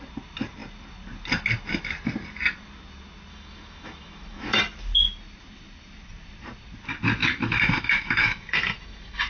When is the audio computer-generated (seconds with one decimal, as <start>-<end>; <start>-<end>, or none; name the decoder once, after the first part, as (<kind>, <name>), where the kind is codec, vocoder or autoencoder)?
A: 3.3-4.6 (autoencoder, DAC-VAE); 7.2-9.3